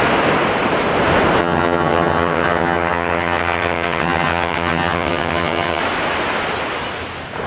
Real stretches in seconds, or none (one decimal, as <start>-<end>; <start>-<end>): 0.0-1.4; 5.8-7.5